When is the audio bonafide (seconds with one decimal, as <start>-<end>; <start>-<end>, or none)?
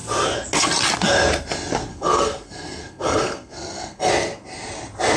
0.0-1.9; 4.1-5.2